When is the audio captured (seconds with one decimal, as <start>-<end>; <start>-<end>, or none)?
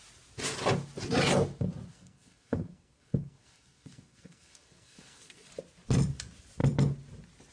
0.0-1.9; 5.5-7.5